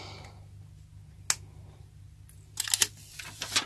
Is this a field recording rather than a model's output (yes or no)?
yes